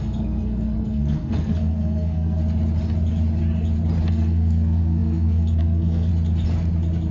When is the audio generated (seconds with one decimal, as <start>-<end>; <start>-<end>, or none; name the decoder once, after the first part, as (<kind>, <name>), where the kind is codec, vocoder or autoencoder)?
0.0-2.4 (codec, SNAC); 4.1-6.1